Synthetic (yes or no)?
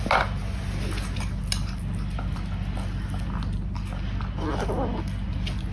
no